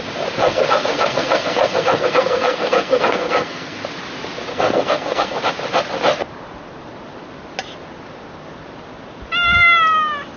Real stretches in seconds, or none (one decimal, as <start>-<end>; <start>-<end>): 0.0-0.4; 3.8-4.5; 5.4-10.4